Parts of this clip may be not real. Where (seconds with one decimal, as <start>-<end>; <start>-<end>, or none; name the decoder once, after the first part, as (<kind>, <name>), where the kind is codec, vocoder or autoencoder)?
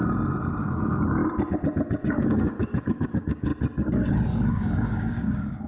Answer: 0.6-1.2 (codec, DAC); 2.1-3.5; 4.5-5.7